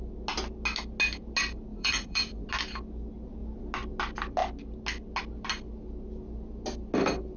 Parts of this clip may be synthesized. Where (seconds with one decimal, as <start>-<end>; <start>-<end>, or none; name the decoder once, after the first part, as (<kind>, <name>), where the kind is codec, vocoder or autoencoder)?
1.7-2.5 (vocoder, Vocos)

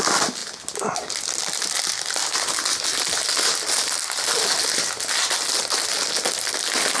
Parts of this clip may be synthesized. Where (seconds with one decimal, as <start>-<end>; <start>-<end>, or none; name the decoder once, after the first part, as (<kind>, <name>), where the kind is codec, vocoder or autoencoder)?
none

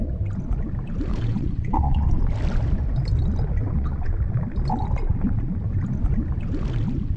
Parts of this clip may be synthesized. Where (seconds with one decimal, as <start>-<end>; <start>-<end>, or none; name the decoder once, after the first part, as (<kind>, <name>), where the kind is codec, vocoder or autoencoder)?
1.1-2.2 (vocoder, WaveNeXt); 3.6-4.1

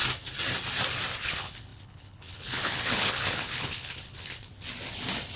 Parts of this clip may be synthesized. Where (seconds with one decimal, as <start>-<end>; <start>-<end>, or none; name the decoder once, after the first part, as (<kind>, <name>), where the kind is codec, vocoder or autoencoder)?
1.2-4.5 (codec, HILCodec)

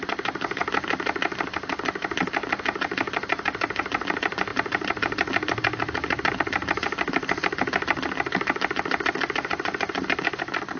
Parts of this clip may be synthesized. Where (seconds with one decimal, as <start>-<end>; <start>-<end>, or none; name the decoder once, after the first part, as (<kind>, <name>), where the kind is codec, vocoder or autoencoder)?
none

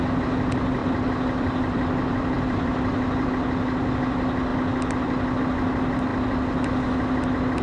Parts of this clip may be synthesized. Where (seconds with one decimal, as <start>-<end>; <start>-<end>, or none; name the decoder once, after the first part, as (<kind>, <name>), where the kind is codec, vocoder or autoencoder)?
0.8-3.3 (vocoder, BigVGAN v2)

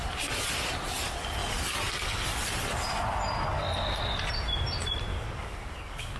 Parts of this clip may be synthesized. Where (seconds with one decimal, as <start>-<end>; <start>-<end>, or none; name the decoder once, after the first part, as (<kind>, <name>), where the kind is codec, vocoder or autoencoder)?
5.1-6.2 (codec, DAC)

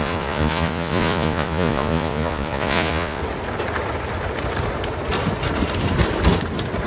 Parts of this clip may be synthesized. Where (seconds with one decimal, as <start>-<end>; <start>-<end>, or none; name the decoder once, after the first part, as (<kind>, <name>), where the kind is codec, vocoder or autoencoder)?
0.0-3.2 (vocoder, Vocos)